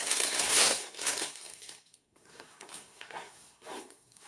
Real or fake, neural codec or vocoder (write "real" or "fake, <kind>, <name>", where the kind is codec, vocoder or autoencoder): fake, codec, SNAC